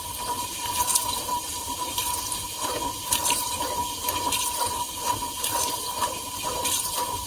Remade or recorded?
remade